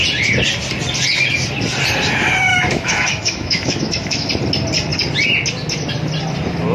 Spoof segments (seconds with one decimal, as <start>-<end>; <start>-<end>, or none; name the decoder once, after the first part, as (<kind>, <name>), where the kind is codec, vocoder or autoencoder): 2.5-4.3 (autoencoder, DAC-VAE)